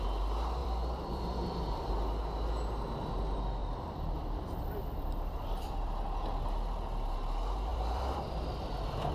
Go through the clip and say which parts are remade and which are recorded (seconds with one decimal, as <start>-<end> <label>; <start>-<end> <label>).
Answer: 0.0-0.6 recorded; 0.6-1.6 remade; 1.6-3.6 recorded; 3.6-5.8 remade; 5.8-7.7 recorded; 7.7-8.7 remade; 8.7-9.1 recorded